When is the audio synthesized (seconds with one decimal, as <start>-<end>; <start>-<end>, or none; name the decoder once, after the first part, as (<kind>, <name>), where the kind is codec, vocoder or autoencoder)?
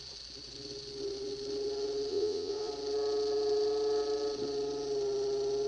2.1-2.7 (vocoder, Vocos)